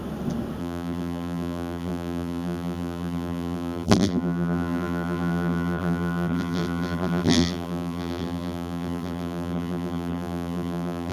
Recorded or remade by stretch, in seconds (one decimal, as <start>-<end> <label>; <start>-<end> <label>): 0.0-0.6 recorded; 0.6-11.1 remade

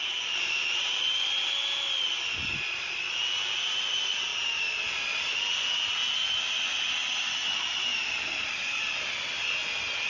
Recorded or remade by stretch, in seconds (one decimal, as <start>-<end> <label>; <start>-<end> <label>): 0.0-7.9 recorded; 7.9-9.5 remade; 9.5-10.1 recorded

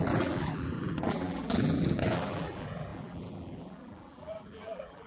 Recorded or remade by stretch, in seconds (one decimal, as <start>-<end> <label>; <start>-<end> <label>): 0.0-5.1 remade

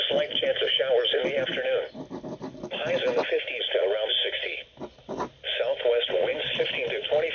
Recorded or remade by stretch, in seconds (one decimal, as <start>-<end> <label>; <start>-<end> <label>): 0.0-7.3 recorded

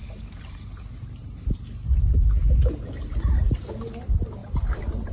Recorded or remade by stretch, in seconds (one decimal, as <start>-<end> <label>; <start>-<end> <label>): 0.0-1.0 remade; 1.0-4.4 recorded; 4.4-5.1 remade

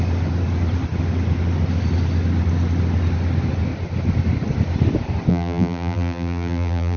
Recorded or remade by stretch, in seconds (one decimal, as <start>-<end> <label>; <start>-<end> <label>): 0.0-5.3 recorded; 5.3-7.0 remade

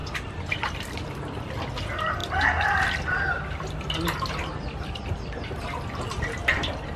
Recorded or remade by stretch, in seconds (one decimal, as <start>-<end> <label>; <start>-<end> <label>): 0.0-1.5 remade; 1.5-7.0 recorded

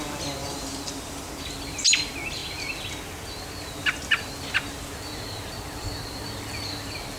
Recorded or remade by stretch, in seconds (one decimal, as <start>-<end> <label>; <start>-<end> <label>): 0.0-0.4 recorded; 0.4-1.4 remade; 1.4-7.2 recorded